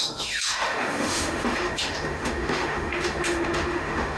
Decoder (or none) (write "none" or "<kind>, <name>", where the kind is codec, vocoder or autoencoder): autoencoder, DAC-VAE